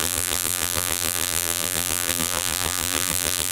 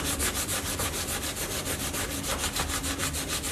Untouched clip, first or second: second